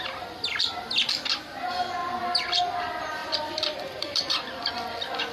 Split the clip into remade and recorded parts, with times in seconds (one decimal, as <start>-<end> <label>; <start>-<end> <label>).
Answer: 0.0-3.2 recorded; 3.2-4.7 remade; 4.7-5.3 recorded